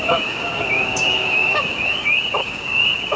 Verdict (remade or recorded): remade